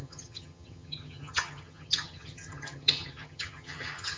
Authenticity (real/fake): fake